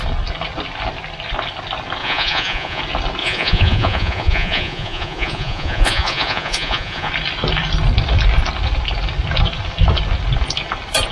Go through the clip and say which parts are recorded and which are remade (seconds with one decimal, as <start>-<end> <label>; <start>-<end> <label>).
0.0-2.0 recorded; 2.0-2.8 remade; 2.8-3.2 recorded; 3.2-7.1 remade; 7.1-11.1 recorded

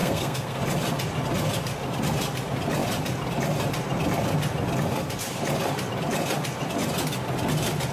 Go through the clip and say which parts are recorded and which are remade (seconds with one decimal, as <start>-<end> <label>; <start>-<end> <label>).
0.0-0.6 remade; 0.6-7.9 recorded

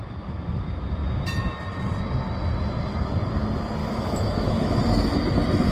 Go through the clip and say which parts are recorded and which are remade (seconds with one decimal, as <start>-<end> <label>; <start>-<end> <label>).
0.0-3.8 recorded; 3.8-4.8 remade; 4.8-5.7 recorded

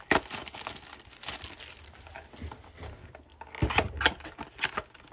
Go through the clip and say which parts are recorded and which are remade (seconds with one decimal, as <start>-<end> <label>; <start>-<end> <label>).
0.0-5.1 recorded

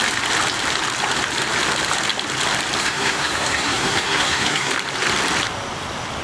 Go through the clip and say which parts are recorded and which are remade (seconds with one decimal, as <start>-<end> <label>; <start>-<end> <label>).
0.0-2.8 recorded; 2.8-4.7 remade; 4.7-6.2 recorded

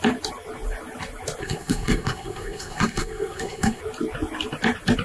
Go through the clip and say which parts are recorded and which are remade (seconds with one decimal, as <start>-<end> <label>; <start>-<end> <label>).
0.0-1.4 recorded; 1.4-3.8 remade; 3.8-5.0 recorded

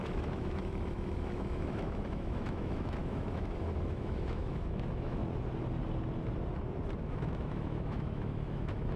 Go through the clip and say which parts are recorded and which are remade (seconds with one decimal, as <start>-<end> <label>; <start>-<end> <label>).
0.0-5.2 remade; 5.2-7.1 recorded; 7.1-9.0 remade

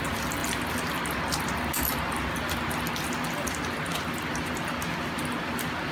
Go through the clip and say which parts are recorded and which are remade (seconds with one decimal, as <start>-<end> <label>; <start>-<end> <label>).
0.0-5.9 recorded